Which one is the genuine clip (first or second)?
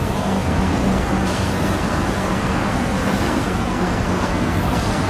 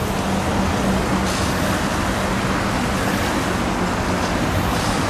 second